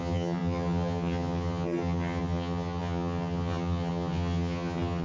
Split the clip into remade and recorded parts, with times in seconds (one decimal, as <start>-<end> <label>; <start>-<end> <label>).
0.0-5.0 remade